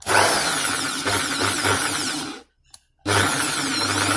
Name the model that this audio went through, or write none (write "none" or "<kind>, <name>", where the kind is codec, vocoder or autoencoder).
none